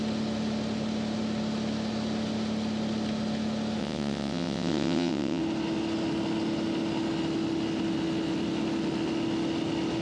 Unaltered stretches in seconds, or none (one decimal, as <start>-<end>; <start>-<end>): 0.0-3.8; 5.4-10.0